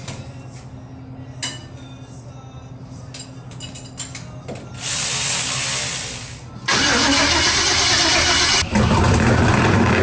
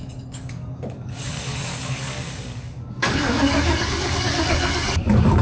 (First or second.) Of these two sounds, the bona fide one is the first